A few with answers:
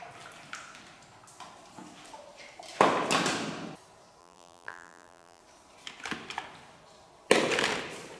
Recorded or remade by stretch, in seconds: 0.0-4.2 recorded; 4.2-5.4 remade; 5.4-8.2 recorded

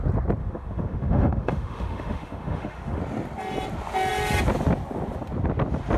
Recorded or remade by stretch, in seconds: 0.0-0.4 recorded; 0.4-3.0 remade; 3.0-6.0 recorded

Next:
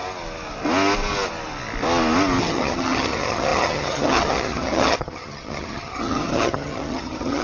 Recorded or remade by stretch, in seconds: 0.0-2.4 recorded; 2.4-7.4 remade

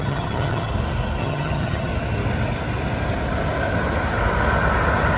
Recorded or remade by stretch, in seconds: 0.0-0.7 remade; 0.7-1.2 recorded; 1.2-1.9 remade; 1.9-5.2 recorded

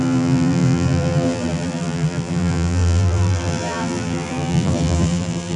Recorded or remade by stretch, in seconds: 0.0-5.6 remade

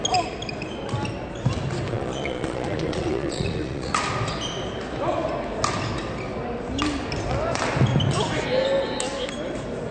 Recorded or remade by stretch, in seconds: 0.0-1.9 recorded; 1.9-3.9 remade; 3.9-9.9 recorded